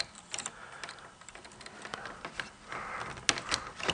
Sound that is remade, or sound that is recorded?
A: recorded